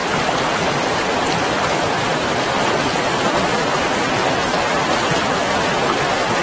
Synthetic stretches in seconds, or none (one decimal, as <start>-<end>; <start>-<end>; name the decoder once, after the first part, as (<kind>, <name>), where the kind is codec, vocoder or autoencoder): none